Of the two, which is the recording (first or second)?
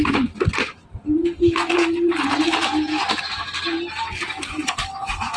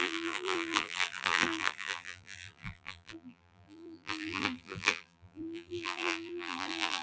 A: first